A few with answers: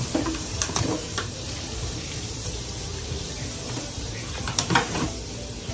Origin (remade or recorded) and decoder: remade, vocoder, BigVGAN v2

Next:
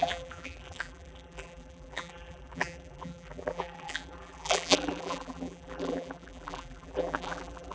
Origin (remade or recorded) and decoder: remade, vocoder, BigVGAN v2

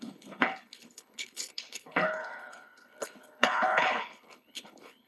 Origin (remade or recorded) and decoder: remade, codec, HILCodec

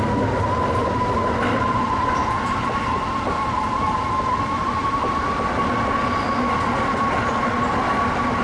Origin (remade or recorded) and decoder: recorded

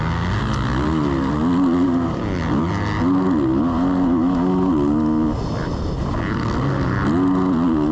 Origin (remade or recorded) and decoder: recorded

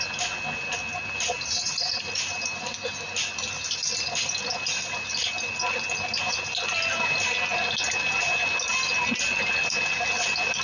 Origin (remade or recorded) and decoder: recorded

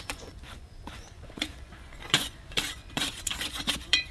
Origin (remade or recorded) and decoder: remade, vocoder, Vocos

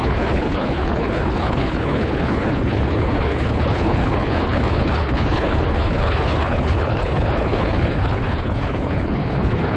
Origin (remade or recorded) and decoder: remade, codec, HILCodec